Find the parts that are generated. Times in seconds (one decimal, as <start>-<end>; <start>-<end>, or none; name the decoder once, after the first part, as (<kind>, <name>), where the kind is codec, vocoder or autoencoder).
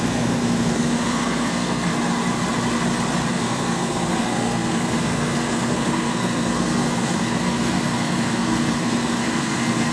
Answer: 0.0-1.9 (codec, SNAC); 3.3-9.9